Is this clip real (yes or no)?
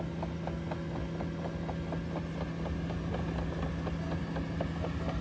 yes